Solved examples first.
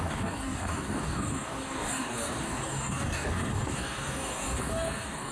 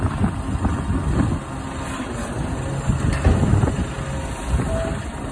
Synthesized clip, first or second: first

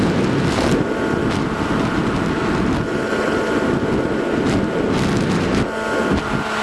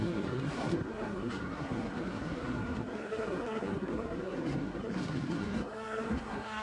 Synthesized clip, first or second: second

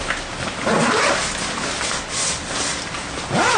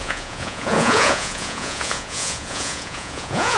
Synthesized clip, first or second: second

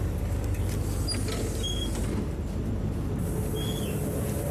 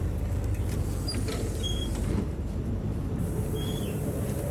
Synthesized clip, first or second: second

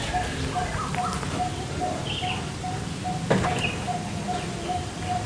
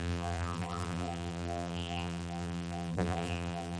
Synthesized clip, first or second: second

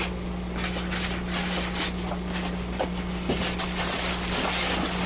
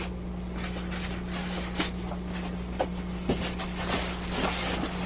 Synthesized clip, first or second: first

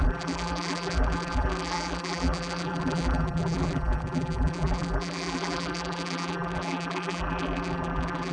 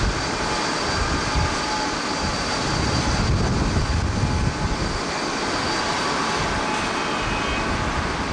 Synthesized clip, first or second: first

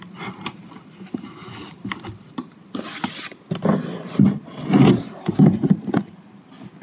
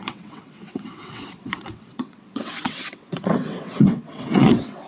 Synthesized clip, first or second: second